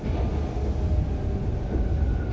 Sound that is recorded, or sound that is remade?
recorded